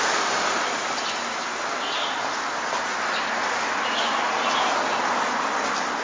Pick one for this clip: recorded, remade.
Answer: recorded